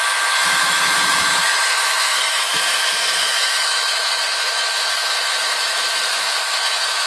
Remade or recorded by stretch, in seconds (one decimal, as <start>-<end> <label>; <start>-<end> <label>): 0.0-7.1 remade